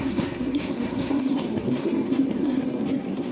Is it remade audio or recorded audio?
remade